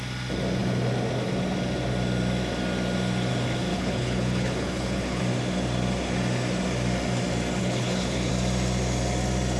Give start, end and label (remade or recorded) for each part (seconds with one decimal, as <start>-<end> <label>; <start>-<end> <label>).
0.0-3.7 recorded; 3.7-5.2 remade; 5.2-7.6 recorded; 7.6-8.3 remade; 8.3-9.6 recorded